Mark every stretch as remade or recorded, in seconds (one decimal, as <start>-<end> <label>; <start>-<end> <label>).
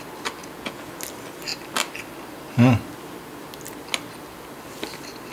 0.0-0.4 recorded; 0.4-0.9 remade; 0.9-5.3 recorded